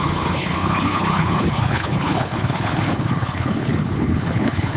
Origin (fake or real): fake